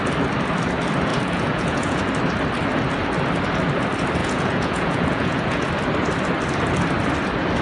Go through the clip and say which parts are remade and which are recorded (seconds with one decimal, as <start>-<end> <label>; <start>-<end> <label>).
0.0-1.1 recorded; 1.1-2.1 remade; 2.1-4.2 recorded; 4.2-5.7 remade; 5.7-7.6 recorded